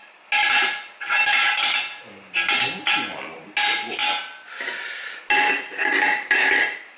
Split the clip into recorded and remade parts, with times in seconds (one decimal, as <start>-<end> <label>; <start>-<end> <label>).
0.0-7.0 recorded